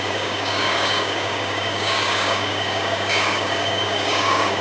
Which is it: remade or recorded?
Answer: remade